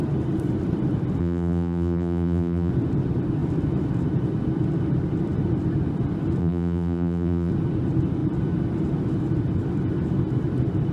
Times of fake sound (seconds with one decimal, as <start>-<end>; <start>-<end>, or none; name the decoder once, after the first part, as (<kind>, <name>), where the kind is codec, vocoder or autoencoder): 1.2-2.7 (vocoder, BigVGAN v2); 6.4-7.5